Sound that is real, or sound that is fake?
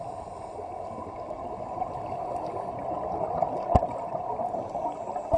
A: real